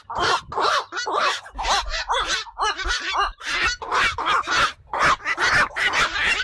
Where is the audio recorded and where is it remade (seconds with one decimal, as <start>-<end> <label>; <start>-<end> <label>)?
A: 0.0-6.4 recorded

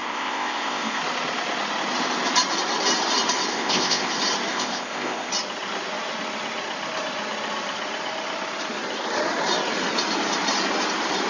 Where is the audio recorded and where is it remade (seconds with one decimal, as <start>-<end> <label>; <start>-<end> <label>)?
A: 0.0-1.0 remade; 1.0-3.5 recorded; 3.5-4.1 remade; 4.1-4.5 recorded; 4.5-5.3 remade; 5.3-11.3 recorded

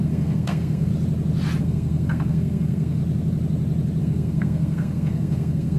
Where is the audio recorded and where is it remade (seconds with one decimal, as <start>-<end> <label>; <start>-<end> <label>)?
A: 0.0-0.9 remade; 0.9-1.6 recorded; 1.6-3.0 remade; 3.0-4.0 recorded; 4.0-5.8 remade

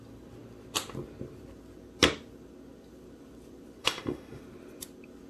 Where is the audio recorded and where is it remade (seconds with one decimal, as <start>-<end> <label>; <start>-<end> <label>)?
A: 0.0-3.8 recorded; 3.8-4.4 remade; 4.4-5.3 recorded

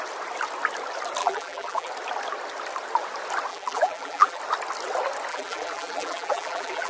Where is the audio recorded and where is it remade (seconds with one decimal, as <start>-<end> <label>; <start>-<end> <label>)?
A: 0.0-1.2 recorded; 1.2-1.9 remade; 1.9-3.5 recorded; 3.5-4.4 remade; 4.4-5.3 recorded; 5.3-6.9 remade